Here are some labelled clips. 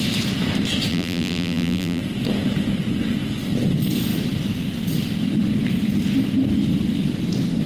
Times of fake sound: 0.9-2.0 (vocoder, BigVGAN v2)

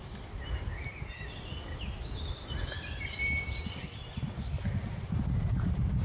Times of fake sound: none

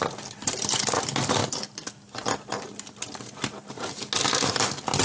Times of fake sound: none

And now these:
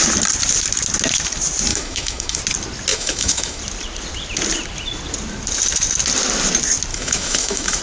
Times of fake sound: 1.7-2.4 (autoencoder, DAC-VAE); 2.9-3.6; 6.9-7.8

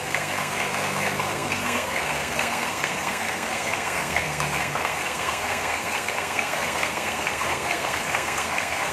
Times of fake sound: 0.0-8.9 (codec, SNAC)